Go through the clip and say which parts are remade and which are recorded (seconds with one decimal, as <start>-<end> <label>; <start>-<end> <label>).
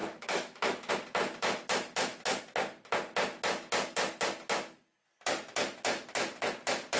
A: 0.0-0.9 remade; 0.9-7.0 recorded